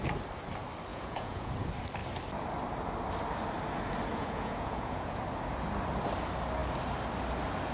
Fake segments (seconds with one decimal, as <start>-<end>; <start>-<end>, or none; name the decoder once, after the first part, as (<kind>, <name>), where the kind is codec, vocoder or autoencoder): 0.9-1.5 (vocoder, Vocos); 4.1-5.2